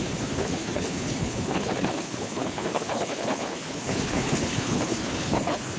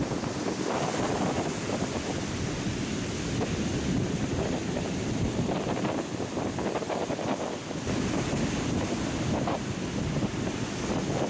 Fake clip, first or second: first